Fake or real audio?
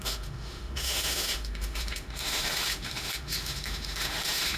fake